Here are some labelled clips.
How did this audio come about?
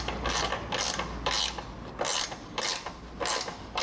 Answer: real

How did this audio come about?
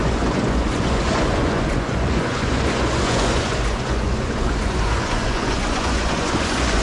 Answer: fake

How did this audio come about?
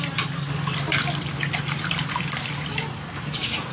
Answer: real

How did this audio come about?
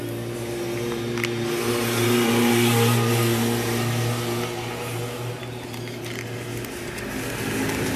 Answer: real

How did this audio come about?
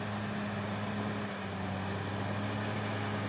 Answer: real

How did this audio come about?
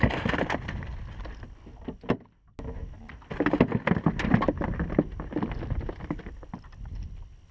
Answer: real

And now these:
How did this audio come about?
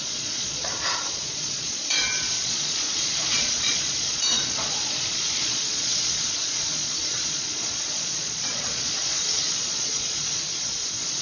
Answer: fake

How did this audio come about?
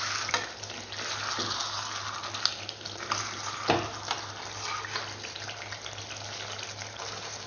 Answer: real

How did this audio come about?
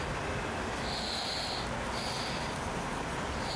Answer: real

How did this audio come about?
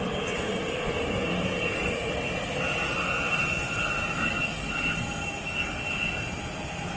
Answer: real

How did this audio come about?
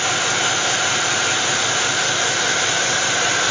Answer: real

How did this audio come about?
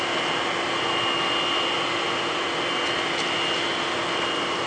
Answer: real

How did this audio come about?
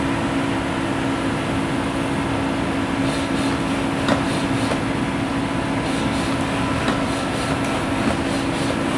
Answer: real